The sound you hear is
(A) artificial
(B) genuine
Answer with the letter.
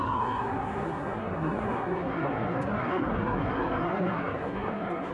A